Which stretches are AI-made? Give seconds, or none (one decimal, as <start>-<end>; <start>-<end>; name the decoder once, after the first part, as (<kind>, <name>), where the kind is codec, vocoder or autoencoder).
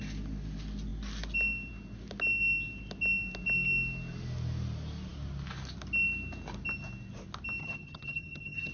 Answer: 7.6-8.7 (vocoder, HiFi-GAN)